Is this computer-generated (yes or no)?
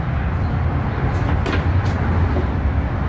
no